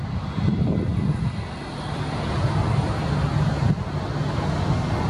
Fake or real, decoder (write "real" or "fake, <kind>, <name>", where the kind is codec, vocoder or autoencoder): real